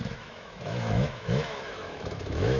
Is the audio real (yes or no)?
no